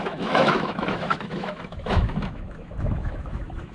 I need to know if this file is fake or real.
fake